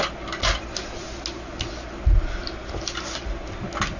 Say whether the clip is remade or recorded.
recorded